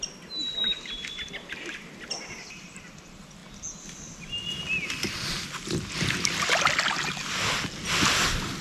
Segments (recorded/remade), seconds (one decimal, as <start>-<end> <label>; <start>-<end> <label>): 0.0-8.6 recorded